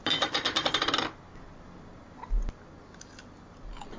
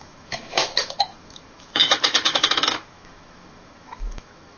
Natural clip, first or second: first